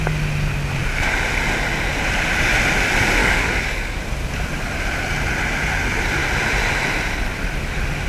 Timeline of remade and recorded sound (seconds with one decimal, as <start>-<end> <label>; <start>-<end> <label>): 0.0-3.2 recorded; 3.2-4.0 remade; 4.0-8.1 recorded